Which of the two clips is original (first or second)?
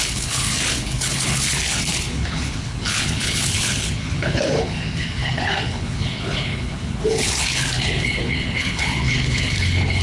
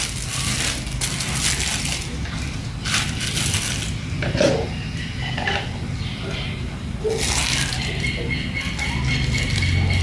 second